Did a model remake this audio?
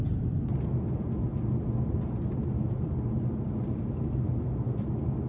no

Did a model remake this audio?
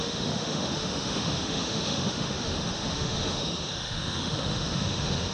yes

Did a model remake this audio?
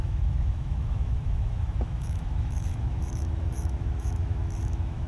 yes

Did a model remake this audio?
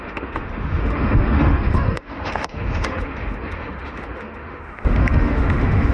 yes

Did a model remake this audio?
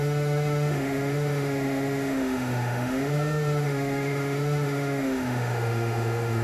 yes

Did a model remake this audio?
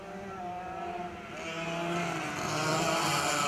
no